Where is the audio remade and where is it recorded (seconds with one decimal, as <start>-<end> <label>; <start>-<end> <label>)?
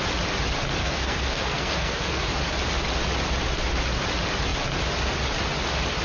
0.0-0.8 recorded; 0.8-2.2 remade; 2.2-6.0 recorded